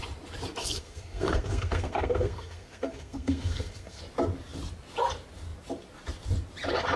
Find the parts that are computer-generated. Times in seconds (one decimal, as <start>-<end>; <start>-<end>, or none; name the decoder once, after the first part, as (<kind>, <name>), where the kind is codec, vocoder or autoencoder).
0.6-4.0 (codec, SNAC)